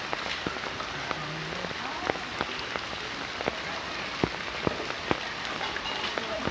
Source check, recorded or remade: recorded